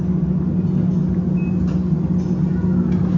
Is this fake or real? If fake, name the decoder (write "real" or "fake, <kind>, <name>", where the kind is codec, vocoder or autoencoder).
real